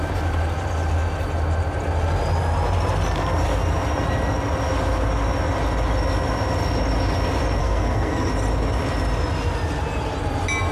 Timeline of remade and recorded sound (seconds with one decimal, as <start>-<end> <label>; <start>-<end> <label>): 0.0-7.6 recorded; 7.6-8.3 remade; 8.3-10.7 recorded